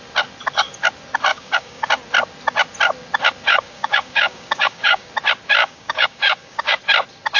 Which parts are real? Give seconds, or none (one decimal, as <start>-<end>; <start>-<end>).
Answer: 0.0-1.3; 1.9-3.5; 5.1-5.6; 6.8-7.4

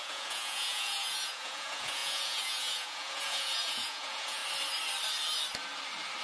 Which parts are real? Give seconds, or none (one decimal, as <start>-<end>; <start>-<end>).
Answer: 4.4-6.2

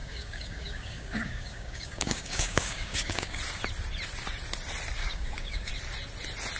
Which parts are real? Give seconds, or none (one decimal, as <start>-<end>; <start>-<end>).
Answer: 3.4-5.0; 5.7-6.6

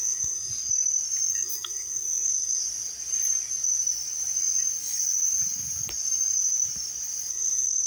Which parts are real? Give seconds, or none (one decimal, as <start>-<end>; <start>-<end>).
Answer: 0.5-1.3; 2.6-7.3

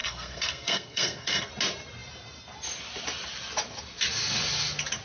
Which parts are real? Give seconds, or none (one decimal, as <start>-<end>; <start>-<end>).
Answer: 1.5-5.0

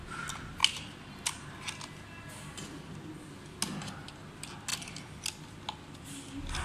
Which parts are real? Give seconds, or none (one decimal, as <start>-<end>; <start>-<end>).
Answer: 0.0-6.6